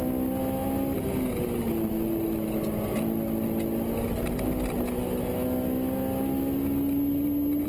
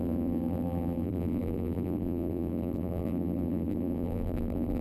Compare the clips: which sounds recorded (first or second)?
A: first